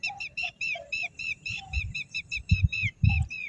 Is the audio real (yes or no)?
no